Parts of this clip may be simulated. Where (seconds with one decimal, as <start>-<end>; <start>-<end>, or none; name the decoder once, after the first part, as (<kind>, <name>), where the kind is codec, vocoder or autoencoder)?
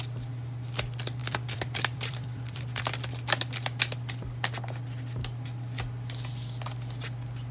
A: 1.2-2.8 (vocoder, BigVGAN v2)